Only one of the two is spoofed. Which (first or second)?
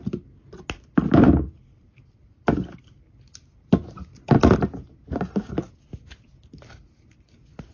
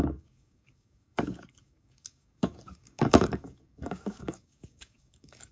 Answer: second